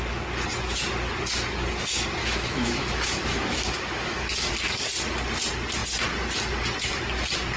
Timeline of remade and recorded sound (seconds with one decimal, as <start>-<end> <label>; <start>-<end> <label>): 0.0-2.2 recorded; 2.2-4.5 remade; 4.5-7.6 recorded

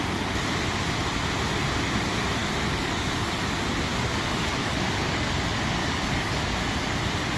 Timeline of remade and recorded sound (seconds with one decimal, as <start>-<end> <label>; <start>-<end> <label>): 0.0-2.4 recorded; 2.4-3.4 remade; 3.4-3.9 recorded; 3.9-5.3 remade; 5.3-5.8 recorded; 5.8-6.5 remade; 6.5-7.4 recorded

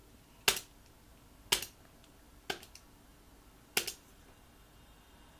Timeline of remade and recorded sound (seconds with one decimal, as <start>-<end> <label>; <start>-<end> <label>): 0.0-5.4 recorded

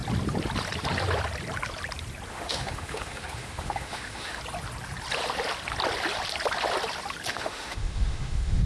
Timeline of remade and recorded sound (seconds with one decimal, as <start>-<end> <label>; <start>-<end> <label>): 0.0-2.3 recorded; 2.3-4.4 remade; 4.4-7.3 recorded; 7.3-8.7 remade

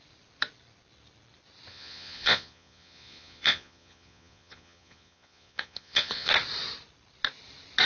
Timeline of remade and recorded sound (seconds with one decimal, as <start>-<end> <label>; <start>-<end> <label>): 0.0-1.7 recorded; 1.7-6.3 remade; 6.3-7.9 recorded

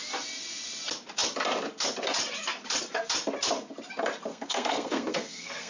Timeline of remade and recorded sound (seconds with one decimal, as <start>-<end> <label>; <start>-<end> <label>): 0.0-4.3 recorded; 4.3-5.7 remade

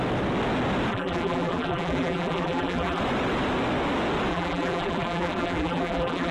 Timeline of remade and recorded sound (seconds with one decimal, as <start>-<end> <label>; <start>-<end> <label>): 0.0-0.9 recorded; 0.9-3.0 remade; 3.0-4.3 recorded; 4.3-6.3 remade

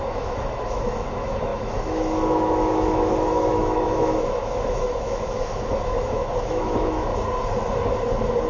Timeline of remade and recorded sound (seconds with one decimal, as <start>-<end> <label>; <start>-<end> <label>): 0.0-7.1 remade; 7.1-8.5 recorded